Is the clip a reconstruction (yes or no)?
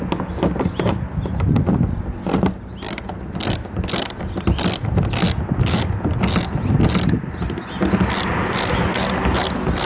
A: no